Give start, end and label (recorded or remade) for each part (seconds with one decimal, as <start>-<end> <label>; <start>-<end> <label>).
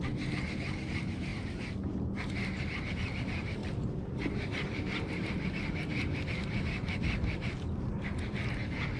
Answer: 0.0-3.6 recorded; 3.6-5.3 remade; 5.3-9.0 recorded